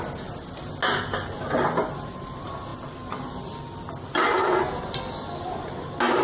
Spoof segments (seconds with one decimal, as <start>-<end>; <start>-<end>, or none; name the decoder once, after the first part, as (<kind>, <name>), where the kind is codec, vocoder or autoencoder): none